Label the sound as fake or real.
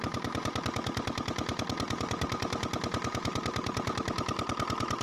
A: real